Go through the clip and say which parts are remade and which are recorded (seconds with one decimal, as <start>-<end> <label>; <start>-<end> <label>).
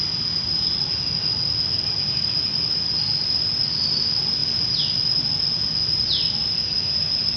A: 0.0-7.4 recorded